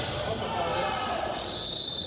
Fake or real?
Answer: real